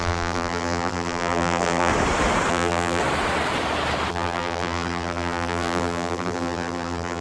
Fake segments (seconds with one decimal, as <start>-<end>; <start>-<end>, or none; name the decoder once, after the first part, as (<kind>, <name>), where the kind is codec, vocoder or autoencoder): 0.0-1.9 (vocoder, BigVGAN v2); 2.5-3.0; 4.1-7.2

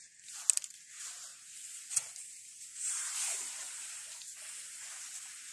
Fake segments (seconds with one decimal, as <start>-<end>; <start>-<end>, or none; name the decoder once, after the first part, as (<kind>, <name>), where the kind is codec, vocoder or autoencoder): 1.3-4.1 (vocoder, BigVGAN v2)

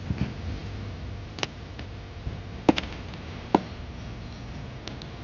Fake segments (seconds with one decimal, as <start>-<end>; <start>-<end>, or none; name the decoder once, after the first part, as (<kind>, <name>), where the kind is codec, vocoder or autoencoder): none

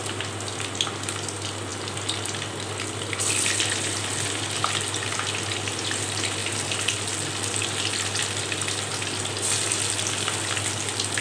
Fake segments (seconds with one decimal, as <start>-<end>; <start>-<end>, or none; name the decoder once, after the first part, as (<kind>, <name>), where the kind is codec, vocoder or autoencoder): none